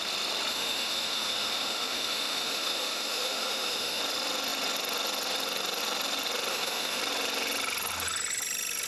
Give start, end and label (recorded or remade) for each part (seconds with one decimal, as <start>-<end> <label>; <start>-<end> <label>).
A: 0.0-0.5 recorded; 0.5-4.0 remade; 4.0-6.5 recorded; 6.5-7.0 remade; 7.0-8.9 recorded